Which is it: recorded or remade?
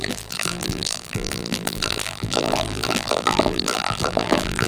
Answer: remade